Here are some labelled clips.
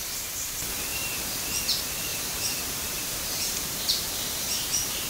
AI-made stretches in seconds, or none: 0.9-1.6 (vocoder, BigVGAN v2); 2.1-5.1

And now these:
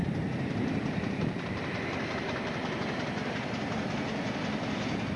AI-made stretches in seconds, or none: 0.0-2.8 (vocoder, BigVGAN v2)